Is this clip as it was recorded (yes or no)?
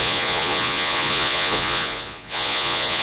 no